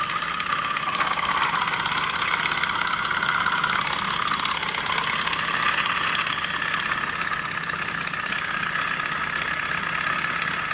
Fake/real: real